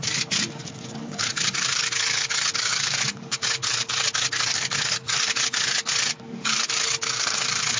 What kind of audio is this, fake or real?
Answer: fake